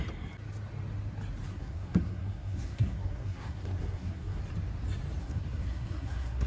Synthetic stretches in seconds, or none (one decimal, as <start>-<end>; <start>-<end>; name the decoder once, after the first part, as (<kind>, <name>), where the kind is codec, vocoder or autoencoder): 1.5-4.4 (codec, SNAC); 5.2-6.5